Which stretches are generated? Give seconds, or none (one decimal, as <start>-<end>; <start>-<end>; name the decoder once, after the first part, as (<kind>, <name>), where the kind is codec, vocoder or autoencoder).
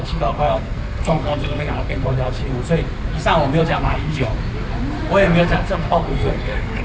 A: 0.0-2.4 (codec, SNAC); 3.6-4.3; 5.4-6.8